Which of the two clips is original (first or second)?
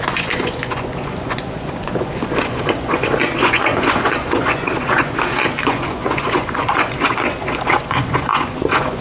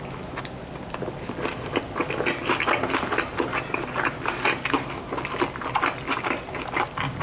second